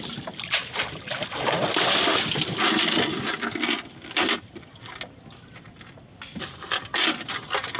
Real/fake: real